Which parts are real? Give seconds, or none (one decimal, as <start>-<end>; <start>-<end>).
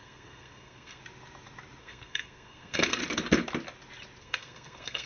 1.0-1.8; 3.0-4.2